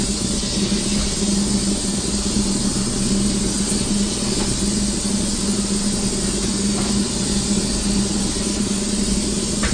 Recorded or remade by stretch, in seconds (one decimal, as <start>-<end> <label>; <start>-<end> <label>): 0.0-9.7 recorded